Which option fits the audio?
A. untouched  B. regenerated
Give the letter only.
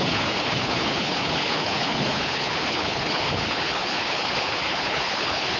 B